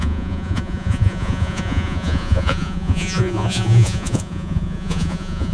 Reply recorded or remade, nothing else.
remade